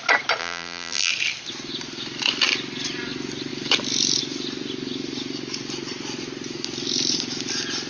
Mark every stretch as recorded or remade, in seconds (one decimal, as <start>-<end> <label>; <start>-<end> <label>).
0.0-0.4 recorded; 0.4-1.1 remade; 1.1-7.9 recorded